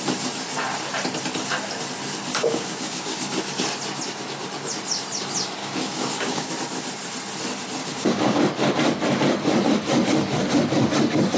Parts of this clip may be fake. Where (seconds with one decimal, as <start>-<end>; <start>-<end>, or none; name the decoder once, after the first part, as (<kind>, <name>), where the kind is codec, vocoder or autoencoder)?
2.3-3.4 (codec, DAC); 5.6-6.5; 7.8-8.4